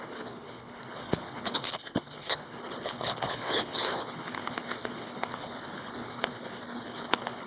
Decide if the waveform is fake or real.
fake